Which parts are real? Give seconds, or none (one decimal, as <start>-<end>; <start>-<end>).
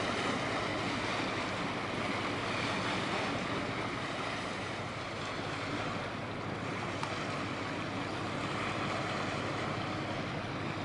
0.0-10.8